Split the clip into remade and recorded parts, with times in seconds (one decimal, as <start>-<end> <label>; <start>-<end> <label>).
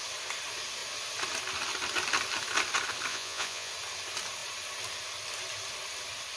0.0-3.1 recorded; 3.1-3.7 remade; 3.7-6.4 recorded